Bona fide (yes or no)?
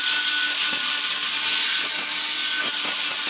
yes